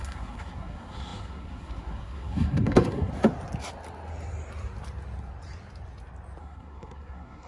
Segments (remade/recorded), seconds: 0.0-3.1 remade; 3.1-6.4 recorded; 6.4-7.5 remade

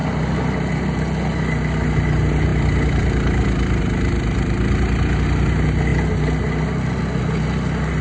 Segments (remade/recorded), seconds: 0.0-8.0 recorded